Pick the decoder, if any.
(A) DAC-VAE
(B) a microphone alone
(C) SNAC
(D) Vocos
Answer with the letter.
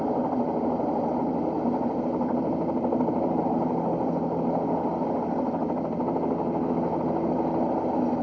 B